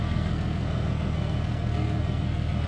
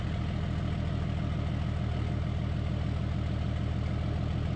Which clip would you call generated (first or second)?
first